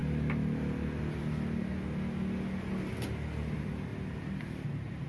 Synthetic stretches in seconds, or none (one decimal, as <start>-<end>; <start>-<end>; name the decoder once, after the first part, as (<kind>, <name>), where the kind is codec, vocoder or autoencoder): none